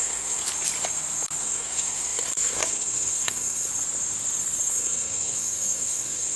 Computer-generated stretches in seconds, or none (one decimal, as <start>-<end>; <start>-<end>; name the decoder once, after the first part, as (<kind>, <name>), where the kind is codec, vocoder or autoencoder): 0.0-0.4 (codec, SNAC); 1.4-3.7; 4.7-6.4